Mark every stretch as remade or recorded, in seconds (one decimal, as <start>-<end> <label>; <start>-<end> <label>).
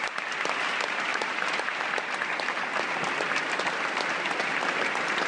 0.0-1.1 recorded; 1.1-1.9 remade; 1.9-5.3 recorded